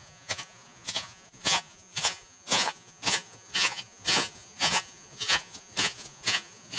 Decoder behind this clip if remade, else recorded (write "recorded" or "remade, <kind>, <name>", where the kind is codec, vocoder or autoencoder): remade, vocoder, Vocos